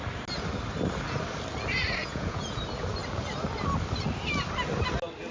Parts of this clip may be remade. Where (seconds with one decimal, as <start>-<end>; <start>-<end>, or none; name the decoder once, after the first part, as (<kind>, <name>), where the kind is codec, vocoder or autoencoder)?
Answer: 2.0-2.6 (vocoder, Vocos)